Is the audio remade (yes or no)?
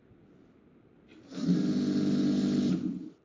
no